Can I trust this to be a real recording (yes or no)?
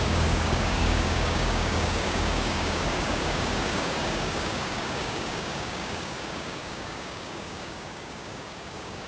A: no